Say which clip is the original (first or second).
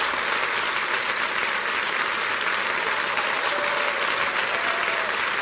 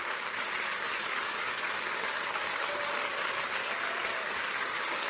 first